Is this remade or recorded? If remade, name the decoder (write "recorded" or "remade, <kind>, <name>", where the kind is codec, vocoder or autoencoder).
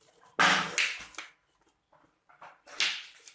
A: recorded